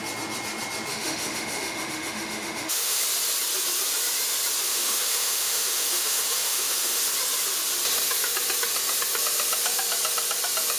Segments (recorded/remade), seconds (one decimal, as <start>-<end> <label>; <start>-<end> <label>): 0.0-0.9 recorded; 0.9-3.0 remade; 3.0-4.7 recorded; 4.7-7.0 remade; 7.0-10.8 recorded